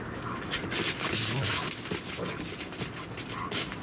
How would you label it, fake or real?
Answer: real